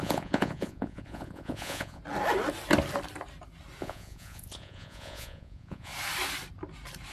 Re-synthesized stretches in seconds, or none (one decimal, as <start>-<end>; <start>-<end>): 0.0-2.0; 3.8-5.9